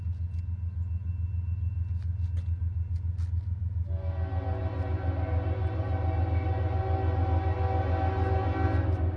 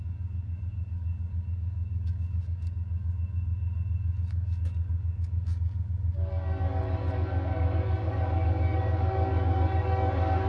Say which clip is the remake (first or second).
second